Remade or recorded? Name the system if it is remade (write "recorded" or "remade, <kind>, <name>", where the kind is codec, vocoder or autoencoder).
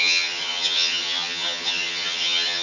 remade, vocoder, HiFi-GAN